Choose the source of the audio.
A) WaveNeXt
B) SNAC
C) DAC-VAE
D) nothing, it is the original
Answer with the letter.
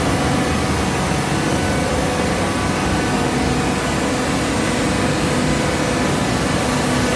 D